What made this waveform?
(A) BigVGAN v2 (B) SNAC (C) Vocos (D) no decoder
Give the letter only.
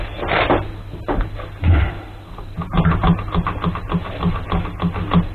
D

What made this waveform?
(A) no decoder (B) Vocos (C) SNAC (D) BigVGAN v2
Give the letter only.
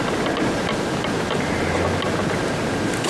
A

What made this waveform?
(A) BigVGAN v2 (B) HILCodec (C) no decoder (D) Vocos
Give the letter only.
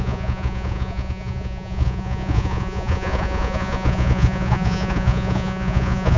D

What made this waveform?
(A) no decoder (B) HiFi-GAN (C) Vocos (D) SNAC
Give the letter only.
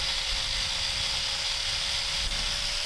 A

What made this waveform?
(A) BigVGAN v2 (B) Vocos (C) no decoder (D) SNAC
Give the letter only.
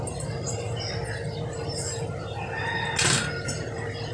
C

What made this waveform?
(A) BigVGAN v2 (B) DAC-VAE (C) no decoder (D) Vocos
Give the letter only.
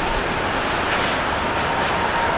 C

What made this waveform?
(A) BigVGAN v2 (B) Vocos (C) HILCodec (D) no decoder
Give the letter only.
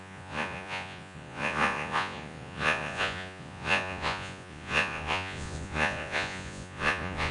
B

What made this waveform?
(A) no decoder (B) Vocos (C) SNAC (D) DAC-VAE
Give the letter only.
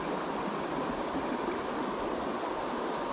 A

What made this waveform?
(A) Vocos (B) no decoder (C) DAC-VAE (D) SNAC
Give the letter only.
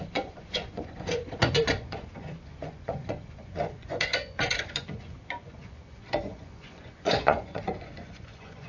A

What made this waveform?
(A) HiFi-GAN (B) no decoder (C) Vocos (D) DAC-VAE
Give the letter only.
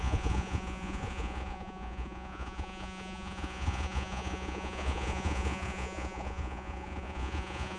C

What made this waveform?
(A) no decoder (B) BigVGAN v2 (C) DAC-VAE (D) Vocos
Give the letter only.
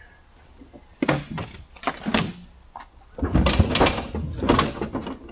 A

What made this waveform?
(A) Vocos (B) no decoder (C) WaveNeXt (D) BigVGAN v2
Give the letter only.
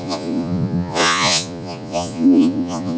A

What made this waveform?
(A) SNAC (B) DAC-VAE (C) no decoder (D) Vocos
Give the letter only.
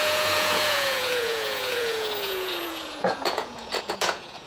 D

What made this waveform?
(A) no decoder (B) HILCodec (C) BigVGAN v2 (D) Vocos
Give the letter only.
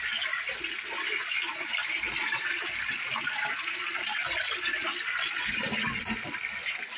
A